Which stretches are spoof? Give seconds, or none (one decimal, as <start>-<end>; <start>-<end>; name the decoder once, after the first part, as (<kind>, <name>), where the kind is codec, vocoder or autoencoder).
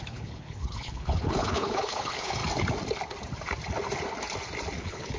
0.0-2.4 (codec, HILCodec); 4.8-5.2